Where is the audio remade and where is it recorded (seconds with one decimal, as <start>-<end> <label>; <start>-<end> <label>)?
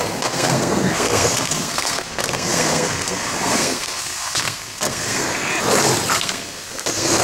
0.0-5.5 remade; 5.5-6.1 recorded; 6.1-7.2 remade